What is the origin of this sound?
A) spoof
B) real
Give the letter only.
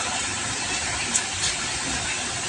A